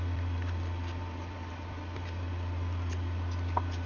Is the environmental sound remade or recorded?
recorded